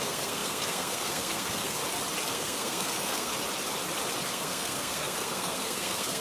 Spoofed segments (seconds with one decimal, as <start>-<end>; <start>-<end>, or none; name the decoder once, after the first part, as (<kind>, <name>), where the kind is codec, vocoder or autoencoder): 0.0-1.8 (codec, SNAC); 2.3-3.3; 4.3-6.2